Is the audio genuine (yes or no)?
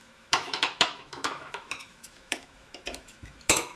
no